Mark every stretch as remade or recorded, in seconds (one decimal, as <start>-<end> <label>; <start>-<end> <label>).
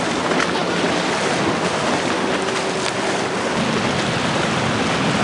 0.0-5.2 recorded